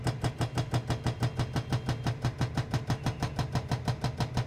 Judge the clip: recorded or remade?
recorded